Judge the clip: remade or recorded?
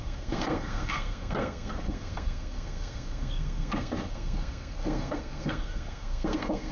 remade